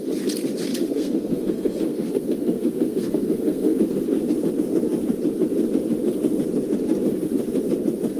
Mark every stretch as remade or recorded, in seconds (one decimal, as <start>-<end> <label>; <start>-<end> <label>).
0.0-0.7 recorded; 0.7-4.5 remade; 4.5-8.2 recorded